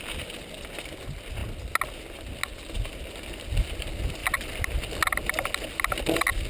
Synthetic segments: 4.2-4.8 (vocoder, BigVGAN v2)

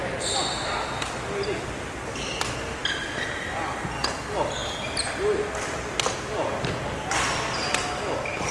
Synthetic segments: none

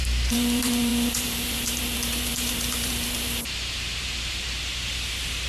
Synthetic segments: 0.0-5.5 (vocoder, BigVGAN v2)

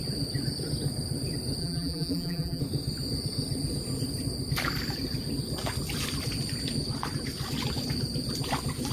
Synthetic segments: 1.6-2.6 (vocoder, BigVGAN v2)